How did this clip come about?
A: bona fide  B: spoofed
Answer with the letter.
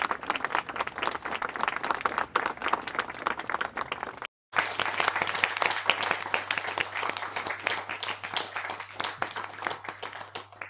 A